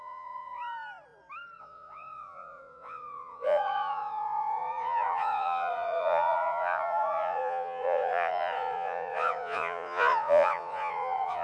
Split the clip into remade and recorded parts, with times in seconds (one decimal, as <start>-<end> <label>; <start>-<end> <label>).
0.0-0.6 remade; 0.6-1.6 recorded; 1.6-11.4 remade